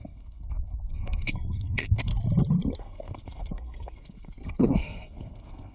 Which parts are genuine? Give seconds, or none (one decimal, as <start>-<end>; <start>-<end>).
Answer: 2.1-2.8